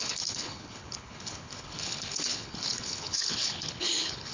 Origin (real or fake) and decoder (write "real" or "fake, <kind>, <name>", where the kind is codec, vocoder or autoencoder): fake, codec, HILCodec